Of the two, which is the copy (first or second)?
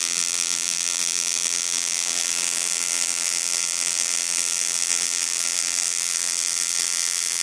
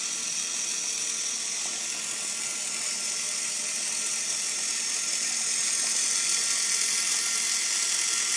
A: first